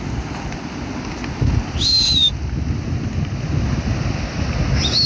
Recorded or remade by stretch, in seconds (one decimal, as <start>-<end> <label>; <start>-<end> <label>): 0.0-5.1 recorded